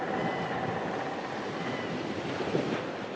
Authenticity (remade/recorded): recorded